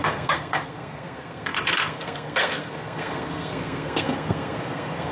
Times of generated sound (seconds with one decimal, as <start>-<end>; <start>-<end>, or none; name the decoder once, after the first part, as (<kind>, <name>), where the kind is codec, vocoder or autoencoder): 0.0-5.1 (codec, SNAC)